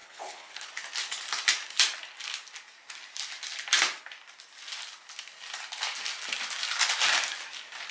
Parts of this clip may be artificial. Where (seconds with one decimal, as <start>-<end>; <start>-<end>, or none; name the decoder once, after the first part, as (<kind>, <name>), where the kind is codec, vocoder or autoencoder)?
0.0-0.7 (codec, HILCodec)